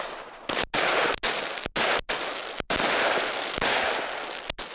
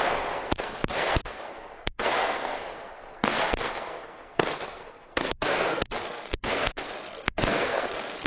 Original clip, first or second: first